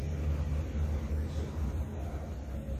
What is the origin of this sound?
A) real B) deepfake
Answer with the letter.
A